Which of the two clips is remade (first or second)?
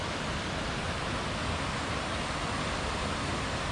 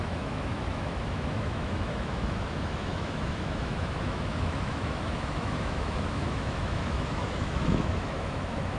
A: second